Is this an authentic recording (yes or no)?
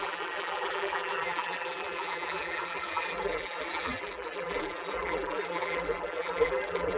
no